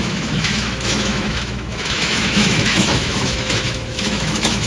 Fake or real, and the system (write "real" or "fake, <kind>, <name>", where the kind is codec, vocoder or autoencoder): fake, autoencoder, DAC-VAE